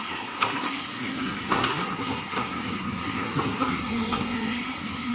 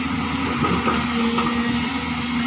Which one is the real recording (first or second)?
second